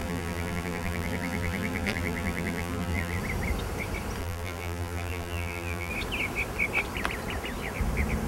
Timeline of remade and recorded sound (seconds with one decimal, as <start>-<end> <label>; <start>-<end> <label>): 0.0-3.2 remade; 3.2-4.2 recorded; 4.2-5.9 remade; 5.9-8.3 recorded